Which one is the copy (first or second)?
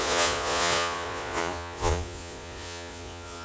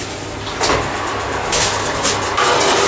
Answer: first